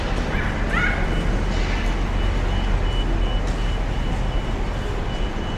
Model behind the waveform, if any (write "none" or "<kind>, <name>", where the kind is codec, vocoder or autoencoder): none